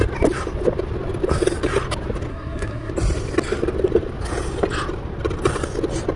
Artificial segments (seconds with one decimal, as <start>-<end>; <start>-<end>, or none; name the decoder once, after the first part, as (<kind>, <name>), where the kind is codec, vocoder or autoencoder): 2.3-2.9 (codec, SNAC)